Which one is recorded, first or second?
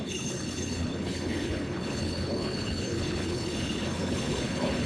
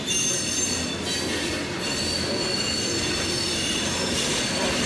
second